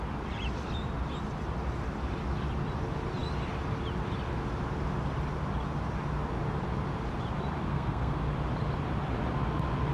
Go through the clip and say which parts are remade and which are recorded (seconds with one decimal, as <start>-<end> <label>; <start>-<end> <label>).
0.0-7.7 recorded; 7.7-8.2 remade; 8.2-9.9 recorded